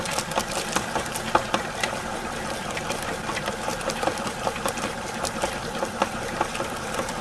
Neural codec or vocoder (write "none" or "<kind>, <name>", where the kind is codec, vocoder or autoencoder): vocoder, BigVGAN v2